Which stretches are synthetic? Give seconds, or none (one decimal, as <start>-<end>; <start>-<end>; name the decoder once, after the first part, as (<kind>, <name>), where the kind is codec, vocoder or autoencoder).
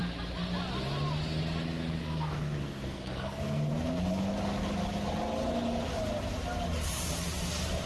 2.0-3.7 (codec, SNAC)